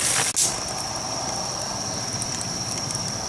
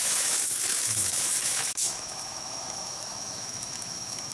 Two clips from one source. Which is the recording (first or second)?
first